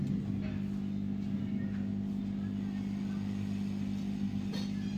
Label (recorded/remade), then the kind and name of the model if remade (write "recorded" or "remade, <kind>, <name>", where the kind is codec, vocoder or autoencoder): recorded